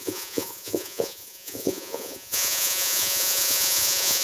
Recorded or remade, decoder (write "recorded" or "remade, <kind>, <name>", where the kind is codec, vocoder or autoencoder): remade, vocoder, Vocos